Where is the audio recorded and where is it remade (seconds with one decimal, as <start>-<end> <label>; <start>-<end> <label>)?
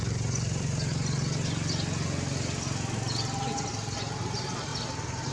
0.0-0.9 remade; 0.9-3.7 recorded; 3.7-5.3 remade